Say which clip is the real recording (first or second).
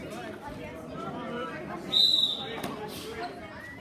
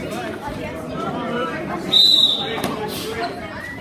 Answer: first